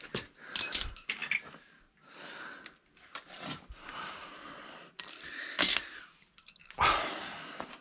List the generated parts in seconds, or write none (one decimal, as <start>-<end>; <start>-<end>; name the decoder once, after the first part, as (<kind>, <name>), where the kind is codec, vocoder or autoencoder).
none